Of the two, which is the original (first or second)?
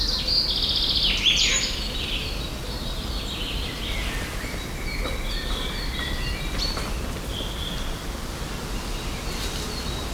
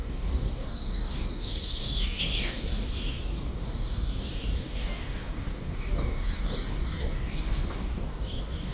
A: first